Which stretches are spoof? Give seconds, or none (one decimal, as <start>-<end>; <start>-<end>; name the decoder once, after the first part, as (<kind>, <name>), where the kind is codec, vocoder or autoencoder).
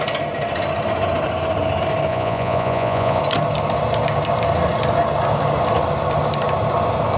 2.1-3.2 (vocoder, Vocos)